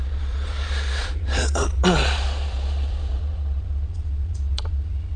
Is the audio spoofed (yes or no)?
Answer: yes